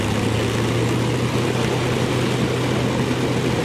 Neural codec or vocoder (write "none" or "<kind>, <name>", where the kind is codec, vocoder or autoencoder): none